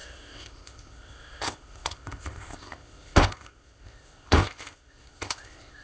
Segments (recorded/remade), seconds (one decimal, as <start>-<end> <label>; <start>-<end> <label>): 0.0-5.8 remade